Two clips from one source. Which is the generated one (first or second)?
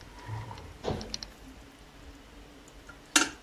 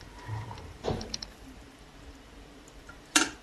second